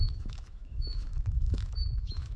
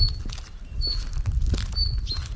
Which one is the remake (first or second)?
first